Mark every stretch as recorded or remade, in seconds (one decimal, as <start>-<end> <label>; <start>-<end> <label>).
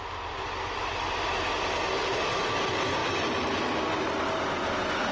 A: 0.0-5.1 recorded